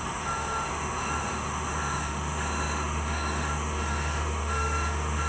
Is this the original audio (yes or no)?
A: no